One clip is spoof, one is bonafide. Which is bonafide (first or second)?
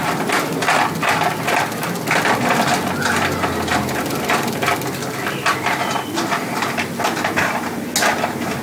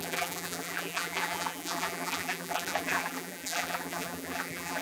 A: first